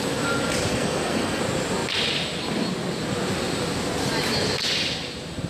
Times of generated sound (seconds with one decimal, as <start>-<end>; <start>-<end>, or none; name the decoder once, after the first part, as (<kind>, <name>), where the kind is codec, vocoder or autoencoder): 0.7-1.4 (codec, SNAC)